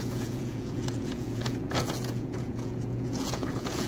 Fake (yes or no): yes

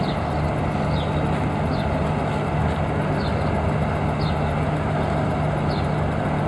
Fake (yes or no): no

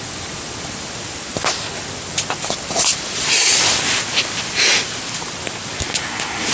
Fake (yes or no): no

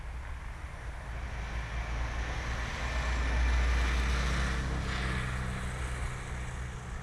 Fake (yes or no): no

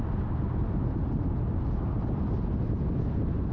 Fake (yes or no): no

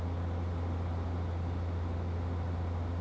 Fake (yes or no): no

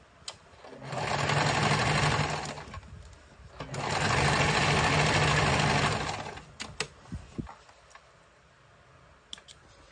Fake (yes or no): no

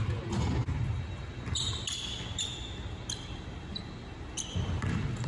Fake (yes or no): no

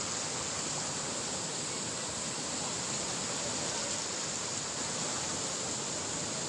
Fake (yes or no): no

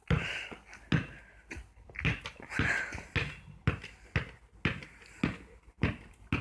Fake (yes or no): no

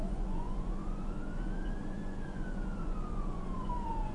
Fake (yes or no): yes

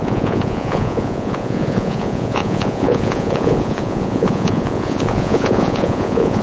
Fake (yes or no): yes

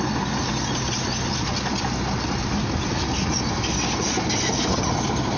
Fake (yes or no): no